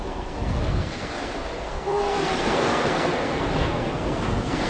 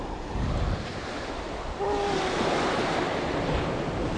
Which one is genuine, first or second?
second